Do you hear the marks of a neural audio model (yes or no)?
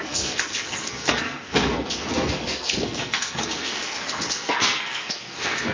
yes